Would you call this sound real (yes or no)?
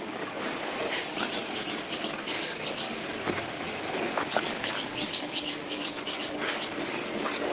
no